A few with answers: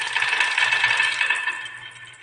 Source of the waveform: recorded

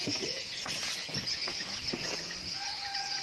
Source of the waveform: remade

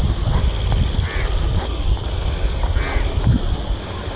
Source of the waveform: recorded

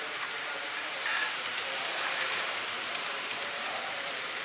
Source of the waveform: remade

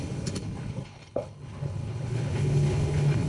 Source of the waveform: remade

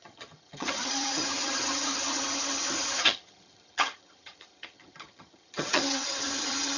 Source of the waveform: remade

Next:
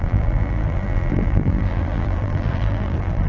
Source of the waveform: remade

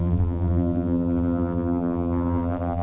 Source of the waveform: remade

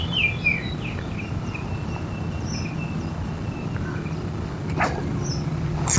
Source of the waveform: recorded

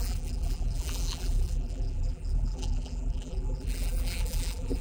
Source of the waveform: remade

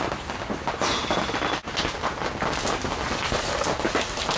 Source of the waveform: recorded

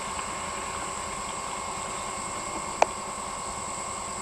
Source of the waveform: recorded